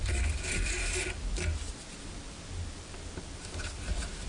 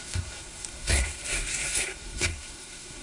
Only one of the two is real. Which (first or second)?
first